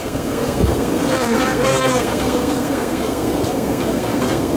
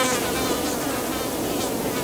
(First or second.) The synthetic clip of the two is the first